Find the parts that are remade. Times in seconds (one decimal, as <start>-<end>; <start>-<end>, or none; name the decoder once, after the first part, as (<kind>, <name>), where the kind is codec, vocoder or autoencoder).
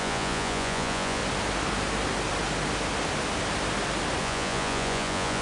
0.0-1.2 (vocoder, Vocos); 4.2-5.4